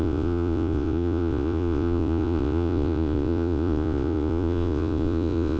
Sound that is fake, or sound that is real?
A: fake